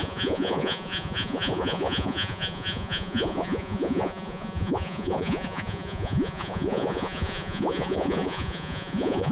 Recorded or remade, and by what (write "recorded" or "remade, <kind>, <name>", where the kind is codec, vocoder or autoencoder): remade, vocoder, Vocos